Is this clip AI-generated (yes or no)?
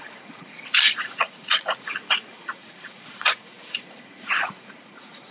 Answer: yes